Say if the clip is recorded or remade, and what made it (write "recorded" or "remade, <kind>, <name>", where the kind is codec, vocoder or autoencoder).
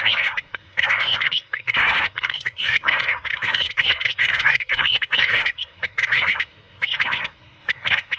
remade, codec, SNAC